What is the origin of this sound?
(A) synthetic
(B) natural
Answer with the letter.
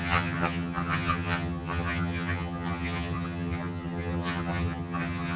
A